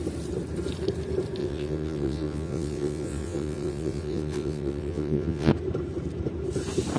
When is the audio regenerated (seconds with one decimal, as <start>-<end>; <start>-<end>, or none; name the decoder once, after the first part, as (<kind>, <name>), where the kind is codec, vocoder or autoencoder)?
1.4-5.5 (vocoder, WaveNeXt)